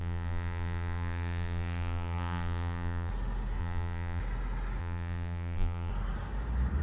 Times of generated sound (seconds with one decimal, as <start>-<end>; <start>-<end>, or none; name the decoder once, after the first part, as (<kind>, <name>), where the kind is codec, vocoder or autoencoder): 0.0-3.1 (vocoder, BigVGAN v2); 3.6-4.2; 4.8-5.9